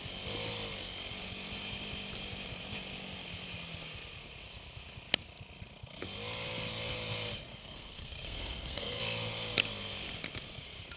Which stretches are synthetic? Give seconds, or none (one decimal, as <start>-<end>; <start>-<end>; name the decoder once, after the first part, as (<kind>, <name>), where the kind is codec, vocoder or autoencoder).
7.6-9.0 (codec, SNAC)